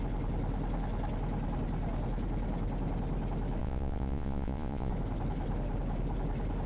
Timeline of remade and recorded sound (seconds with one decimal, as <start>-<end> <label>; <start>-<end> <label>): 0.0-3.6 recorded; 3.6-4.9 remade; 4.9-6.7 recorded